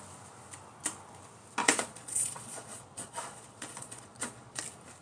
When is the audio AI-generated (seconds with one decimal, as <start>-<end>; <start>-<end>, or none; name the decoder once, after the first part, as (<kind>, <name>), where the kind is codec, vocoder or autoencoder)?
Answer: 1.6-4.6 (vocoder, Vocos)